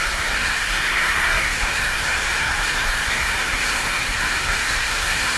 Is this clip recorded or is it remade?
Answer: remade